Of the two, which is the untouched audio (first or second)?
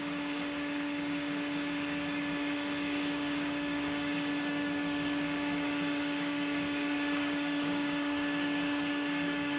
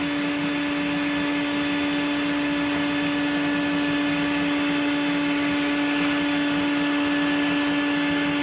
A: second